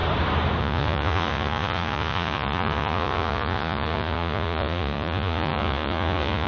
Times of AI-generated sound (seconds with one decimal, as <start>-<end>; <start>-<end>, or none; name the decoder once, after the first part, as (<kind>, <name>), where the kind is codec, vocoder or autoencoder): 0.6-6.5 (vocoder, Vocos)